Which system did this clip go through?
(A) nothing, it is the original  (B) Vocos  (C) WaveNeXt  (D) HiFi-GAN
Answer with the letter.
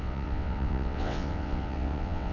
C